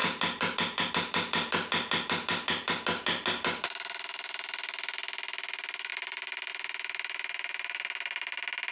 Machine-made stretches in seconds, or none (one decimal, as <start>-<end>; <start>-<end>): none